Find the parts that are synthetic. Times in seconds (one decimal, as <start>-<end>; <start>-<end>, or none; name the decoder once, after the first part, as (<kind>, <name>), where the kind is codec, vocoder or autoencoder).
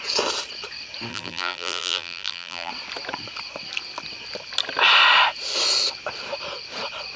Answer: 1.1-2.7 (vocoder, BigVGAN v2)